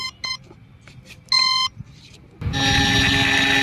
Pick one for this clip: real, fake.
real